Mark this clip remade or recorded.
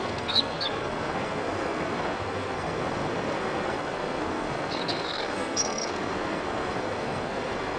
remade